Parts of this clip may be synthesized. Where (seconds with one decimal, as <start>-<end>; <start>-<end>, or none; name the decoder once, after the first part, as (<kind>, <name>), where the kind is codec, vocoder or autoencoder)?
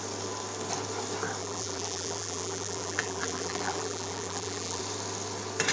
1.4-4.8 (vocoder, BigVGAN v2)